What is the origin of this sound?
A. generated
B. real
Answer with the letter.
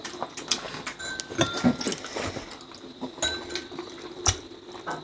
B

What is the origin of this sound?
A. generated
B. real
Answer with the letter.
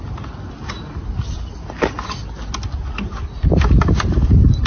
B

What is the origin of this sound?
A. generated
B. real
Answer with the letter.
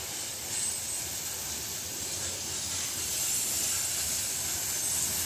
B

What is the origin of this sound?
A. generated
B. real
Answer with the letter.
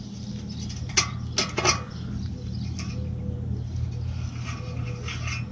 B